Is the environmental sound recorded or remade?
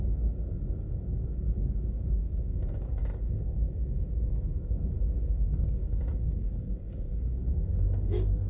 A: remade